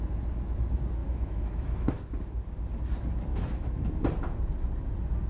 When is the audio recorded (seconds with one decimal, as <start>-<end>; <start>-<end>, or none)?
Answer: 0.0-1.0; 2.0-3.3; 4.0-5.3